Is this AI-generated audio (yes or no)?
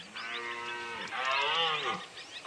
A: no